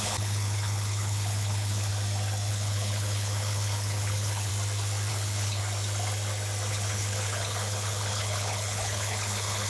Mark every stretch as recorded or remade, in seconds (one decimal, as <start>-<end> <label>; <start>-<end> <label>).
0.0-1.9 remade; 1.9-2.5 recorded; 2.5-4.5 remade; 4.5-5.1 recorded; 5.1-5.6 remade; 5.6-6.7 recorded; 6.7-9.7 remade